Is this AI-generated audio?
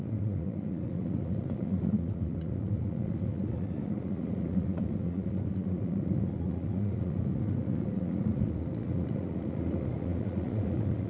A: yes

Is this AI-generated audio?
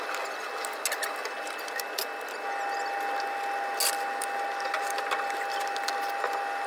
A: no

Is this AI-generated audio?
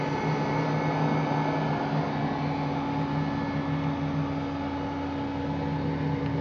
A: no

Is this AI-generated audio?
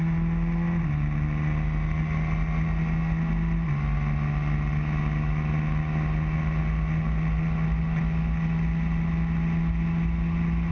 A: no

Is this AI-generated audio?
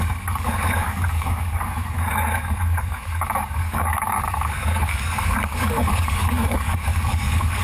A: yes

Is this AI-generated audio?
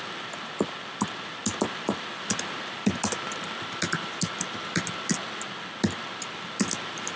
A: no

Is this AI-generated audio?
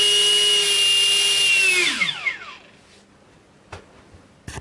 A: no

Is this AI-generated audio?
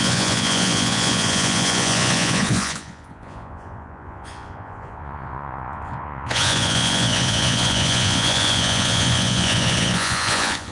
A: yes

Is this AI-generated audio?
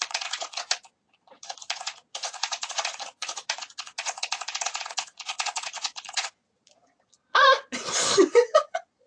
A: yes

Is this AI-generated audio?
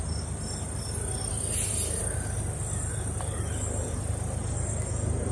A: no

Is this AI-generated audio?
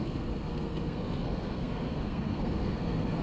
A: yes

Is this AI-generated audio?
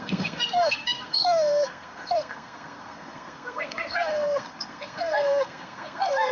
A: yes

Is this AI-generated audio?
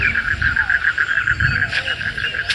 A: no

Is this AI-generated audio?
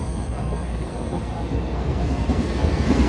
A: yes